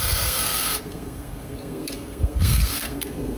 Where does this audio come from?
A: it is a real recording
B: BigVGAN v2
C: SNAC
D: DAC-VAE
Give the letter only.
C